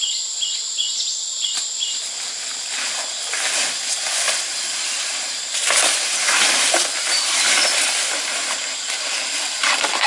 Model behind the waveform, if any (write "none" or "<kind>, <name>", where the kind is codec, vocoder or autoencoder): none